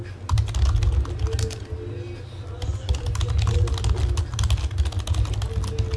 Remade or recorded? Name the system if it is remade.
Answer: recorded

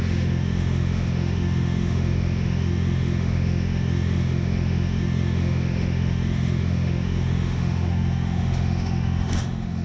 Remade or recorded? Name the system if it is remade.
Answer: remade, autoencoder, DAC-VAE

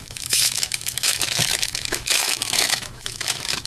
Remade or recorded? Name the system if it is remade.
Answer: remade, autoencoder, DAC-VAE